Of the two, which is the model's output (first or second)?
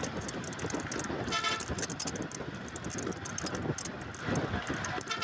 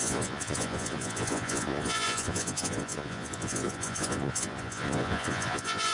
second